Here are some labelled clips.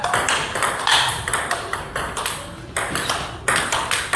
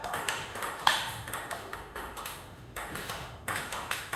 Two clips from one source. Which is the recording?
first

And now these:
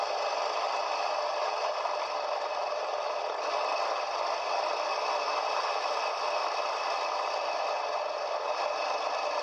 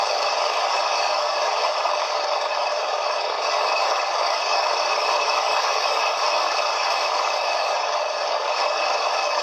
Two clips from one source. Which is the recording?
first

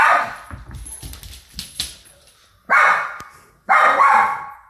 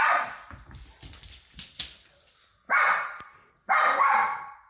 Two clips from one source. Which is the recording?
first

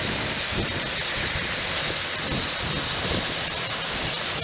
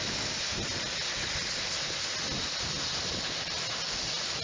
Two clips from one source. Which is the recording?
second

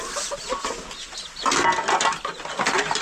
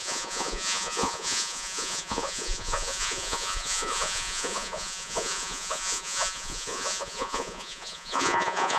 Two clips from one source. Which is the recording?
first